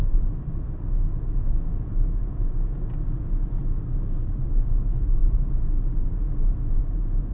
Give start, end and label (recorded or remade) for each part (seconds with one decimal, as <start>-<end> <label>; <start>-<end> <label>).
0.0-1.3 recorded; 1.3-3.6 remade; 3.6-4.6 recorded; 4.6-7.3 remade